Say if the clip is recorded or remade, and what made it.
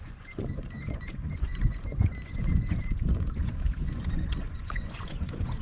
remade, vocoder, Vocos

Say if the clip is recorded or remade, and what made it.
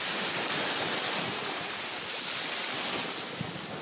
recorded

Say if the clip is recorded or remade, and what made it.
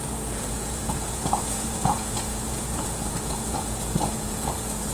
remade, vocoder, Vocos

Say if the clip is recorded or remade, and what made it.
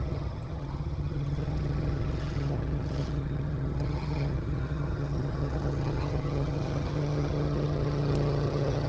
remade, vocoder, HiFi-GAN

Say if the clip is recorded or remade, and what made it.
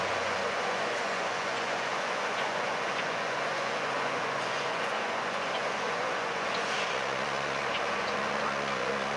remade, vocoder, Vocos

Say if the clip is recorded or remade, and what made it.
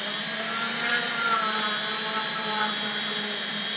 remade, vocoder, BigVGAN v2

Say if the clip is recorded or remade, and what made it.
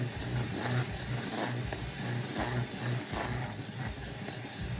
recorded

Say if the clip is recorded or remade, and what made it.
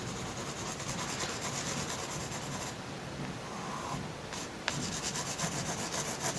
recorded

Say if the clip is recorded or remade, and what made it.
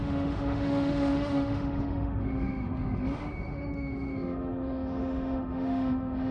remade, autoencoder, DAC-VAE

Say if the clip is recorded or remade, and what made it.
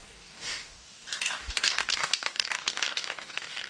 remade, codec, DAC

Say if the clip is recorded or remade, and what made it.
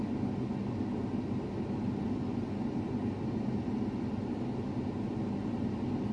recorded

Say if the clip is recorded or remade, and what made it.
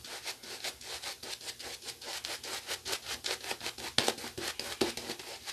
recorded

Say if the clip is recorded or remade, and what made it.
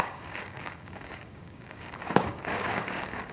remade, codec, DAC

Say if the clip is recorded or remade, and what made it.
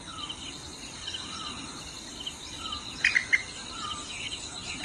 recorded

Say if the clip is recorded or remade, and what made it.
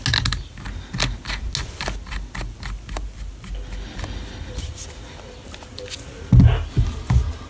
recorded